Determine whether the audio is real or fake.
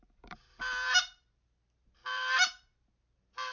fake